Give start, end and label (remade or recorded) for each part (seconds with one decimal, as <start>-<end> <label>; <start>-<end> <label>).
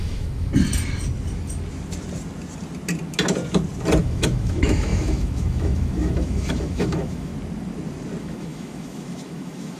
0.0-0.5 remade; 0.5-4.0 recorded; 4.0-7.3 remade; 7.3-8.2 recorded; 8.2-9.8 remade